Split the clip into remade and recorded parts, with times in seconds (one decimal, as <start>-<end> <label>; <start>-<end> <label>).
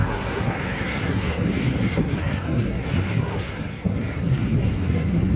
0.0-5.4 remade